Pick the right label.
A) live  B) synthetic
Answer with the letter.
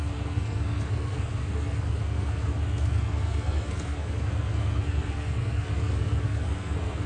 B